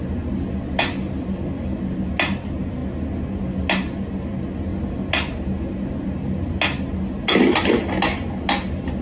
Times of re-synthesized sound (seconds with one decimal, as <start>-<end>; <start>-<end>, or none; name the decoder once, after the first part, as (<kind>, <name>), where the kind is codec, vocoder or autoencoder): none